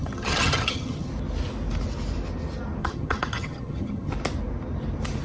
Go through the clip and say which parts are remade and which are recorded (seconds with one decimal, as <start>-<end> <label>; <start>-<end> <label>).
0.0-1.1 remade; 1.1-2.8 recorded; 2.8-4.1 remade; 4.1-5.2 recorded